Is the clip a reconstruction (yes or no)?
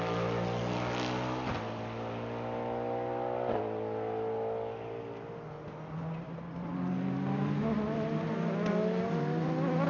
no